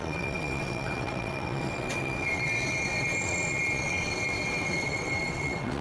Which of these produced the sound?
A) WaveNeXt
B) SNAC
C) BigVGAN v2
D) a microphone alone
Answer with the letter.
A